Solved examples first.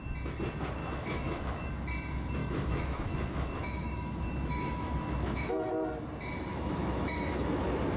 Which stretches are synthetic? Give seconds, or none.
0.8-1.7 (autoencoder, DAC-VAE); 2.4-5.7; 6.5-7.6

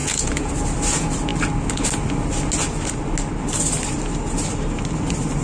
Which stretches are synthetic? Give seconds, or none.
0.0-0.5 (vocoder, Vocos)

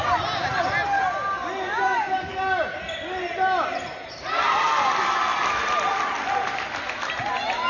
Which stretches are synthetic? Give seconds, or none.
none

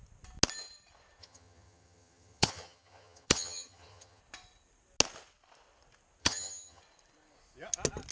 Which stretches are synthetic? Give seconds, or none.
1.2-4.2 (vocoder, HiFi-GAN); 6.2-6.8

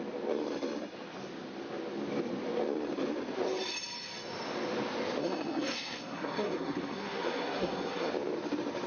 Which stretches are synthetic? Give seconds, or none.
5.2-8.1 (codec, SNAC)

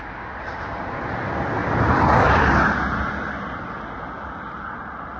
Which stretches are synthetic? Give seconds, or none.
none